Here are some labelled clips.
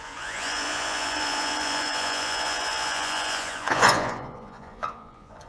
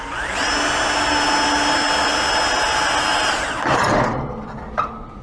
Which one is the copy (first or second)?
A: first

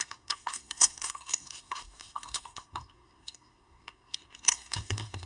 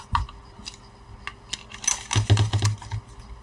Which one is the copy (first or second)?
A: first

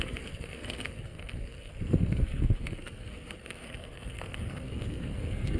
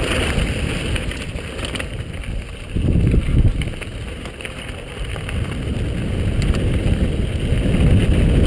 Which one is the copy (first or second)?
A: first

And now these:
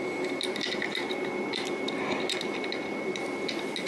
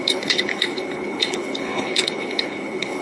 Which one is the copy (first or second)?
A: second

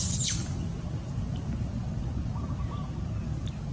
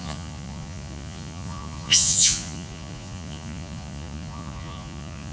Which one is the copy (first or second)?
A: second